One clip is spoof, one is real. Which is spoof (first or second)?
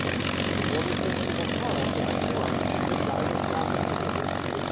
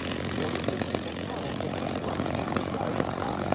second